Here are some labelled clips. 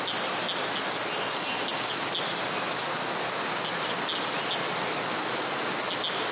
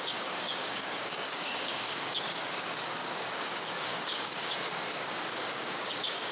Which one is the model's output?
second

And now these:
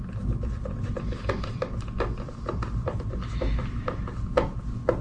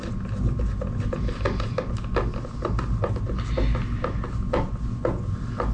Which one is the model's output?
first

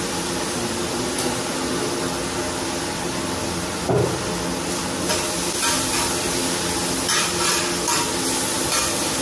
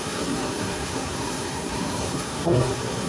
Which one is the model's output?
second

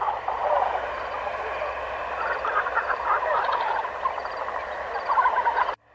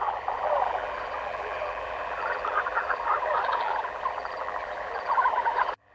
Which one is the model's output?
second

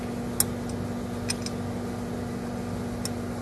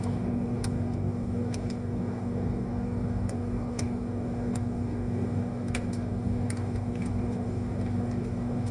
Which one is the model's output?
second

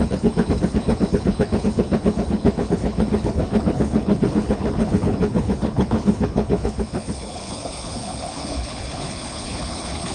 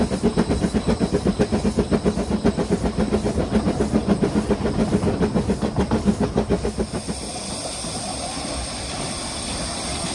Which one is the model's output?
first